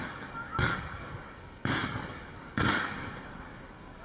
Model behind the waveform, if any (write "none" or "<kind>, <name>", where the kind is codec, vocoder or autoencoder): codec, DAC